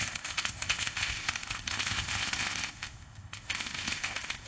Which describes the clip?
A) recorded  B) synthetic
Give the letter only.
B